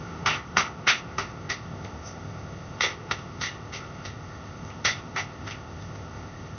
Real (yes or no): no